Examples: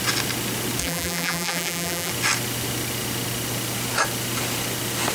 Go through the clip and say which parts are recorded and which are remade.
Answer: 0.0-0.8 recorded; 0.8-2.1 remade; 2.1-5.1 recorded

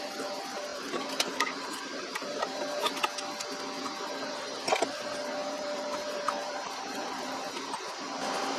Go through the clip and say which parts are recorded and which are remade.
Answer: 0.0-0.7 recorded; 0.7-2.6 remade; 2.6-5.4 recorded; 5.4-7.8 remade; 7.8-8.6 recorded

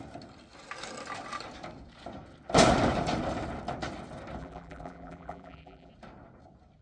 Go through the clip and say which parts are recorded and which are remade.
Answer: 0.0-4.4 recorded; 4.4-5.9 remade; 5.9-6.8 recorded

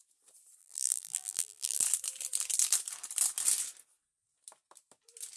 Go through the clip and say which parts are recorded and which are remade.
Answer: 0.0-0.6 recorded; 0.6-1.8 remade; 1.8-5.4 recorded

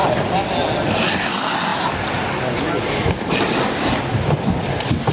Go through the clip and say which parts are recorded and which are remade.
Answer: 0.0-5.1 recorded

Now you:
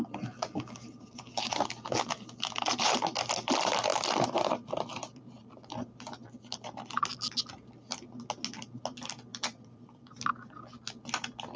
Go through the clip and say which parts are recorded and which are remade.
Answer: 0.0-3.9 recorded; 3.9-5.6 remade; 5.6-6.2 recorded; 6.2-7.0 remade; 7.0-9.3 recorded; 9.3-10.2 remade; 10.2-11.6 recorded

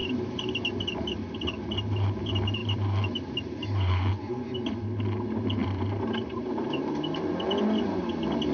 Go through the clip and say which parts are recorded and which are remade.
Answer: 0.0-0.8 remade; 0.8-2.6 recorded; 2.6-4.1 remade; 4.1-5.6 recorded; 5.6-7.2 remade; 7.2-8.5 recorded